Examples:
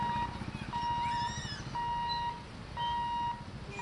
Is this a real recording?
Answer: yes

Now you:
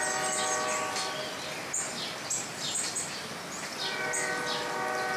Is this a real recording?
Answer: yes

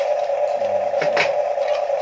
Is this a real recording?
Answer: yes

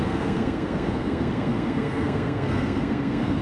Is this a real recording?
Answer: no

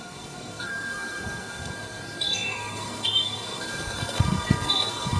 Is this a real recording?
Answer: no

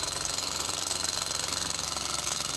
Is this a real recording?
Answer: no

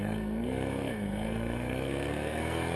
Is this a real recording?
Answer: no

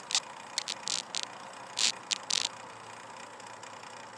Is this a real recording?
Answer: yes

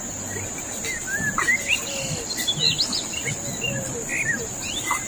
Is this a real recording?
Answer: yes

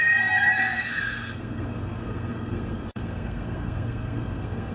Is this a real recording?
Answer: no